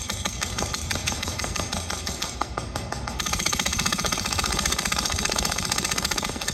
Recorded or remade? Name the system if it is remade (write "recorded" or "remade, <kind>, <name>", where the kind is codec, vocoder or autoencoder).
remade, codec, SNAC